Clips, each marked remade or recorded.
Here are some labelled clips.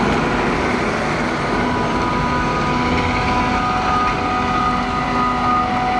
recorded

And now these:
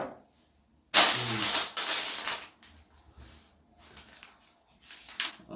recorded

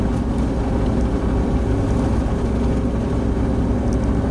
recorded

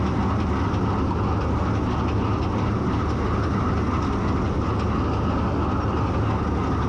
recorded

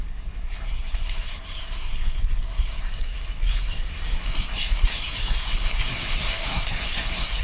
remade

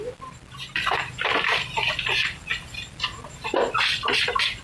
recorded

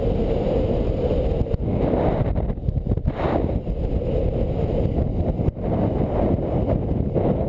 recorded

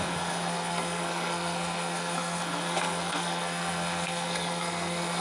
remade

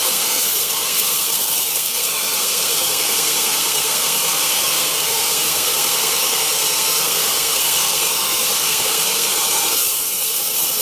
remade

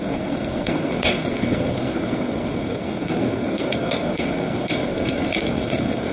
remade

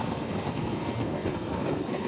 remade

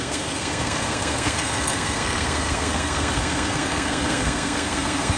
remade